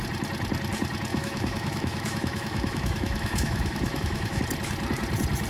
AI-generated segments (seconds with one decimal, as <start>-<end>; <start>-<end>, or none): 1.1-4.4